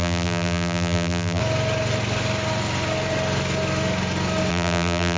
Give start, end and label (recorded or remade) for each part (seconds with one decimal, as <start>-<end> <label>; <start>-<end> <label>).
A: 0.0-1.4 remade; 1.4-4.5 recorded; 4.5-5.2 remade